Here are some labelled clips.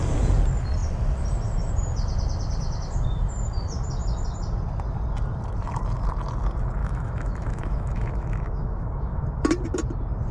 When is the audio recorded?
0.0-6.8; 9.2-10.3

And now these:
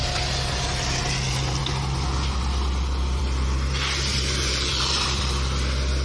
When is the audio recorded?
0.0-4.1; 5.2-6.0

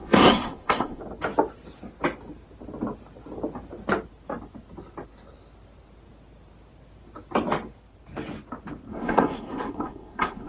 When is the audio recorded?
1.0-8.9

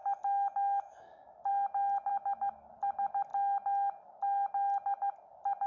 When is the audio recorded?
1.5-2.1; 2.7-5.7